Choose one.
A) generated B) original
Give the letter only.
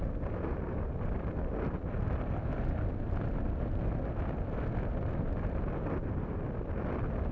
B